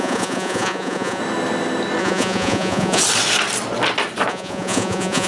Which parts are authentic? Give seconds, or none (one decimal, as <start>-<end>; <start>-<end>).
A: 1.2-2.0; 3.0-4.3